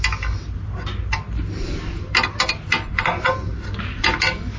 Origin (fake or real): real